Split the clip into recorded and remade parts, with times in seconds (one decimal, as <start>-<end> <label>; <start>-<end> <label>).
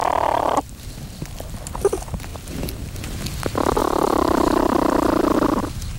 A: 0.0-3.8 remade; 3.8-6.0 recorded